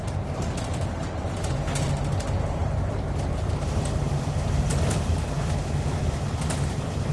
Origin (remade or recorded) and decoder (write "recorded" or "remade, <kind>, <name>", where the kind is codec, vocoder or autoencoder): recorded